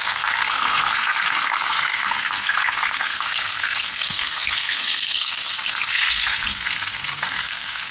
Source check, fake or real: fake